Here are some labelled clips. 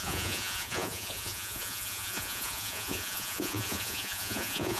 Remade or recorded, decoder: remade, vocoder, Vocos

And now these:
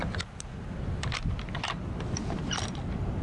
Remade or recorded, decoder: recorded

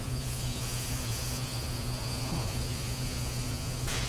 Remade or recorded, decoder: remade, vocoder, Vocos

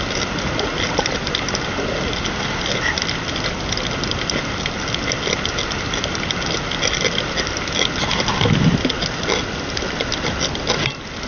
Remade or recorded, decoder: recorded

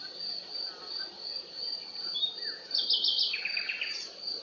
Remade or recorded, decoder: recorded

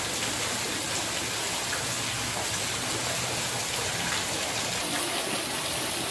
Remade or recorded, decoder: recorded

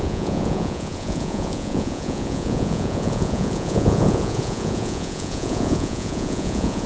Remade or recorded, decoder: remade, vocoder, Vocos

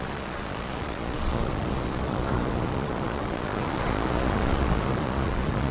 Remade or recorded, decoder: remade, vocoder, Vocos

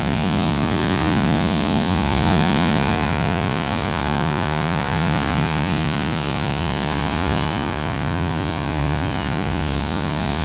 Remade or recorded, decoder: remade, vocoder, Vocos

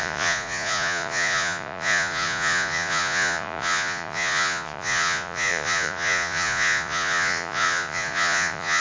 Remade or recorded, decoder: remade, vocoder, Vocos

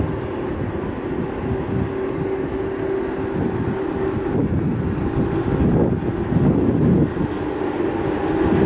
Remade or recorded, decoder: recorded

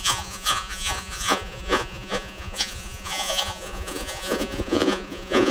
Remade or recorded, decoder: remade, vocoder, Vocos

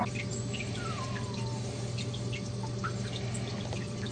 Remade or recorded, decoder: recorded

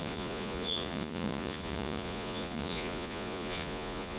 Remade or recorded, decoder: remade, vocoder, Vocos